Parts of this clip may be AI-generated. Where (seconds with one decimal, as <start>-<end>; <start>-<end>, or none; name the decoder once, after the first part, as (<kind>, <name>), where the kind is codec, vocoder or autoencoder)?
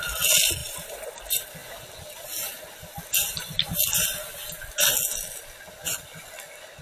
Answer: 0.6-1.2 (vocoder, BigVGAN v2)